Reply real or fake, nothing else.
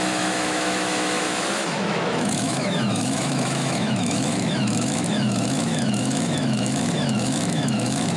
fake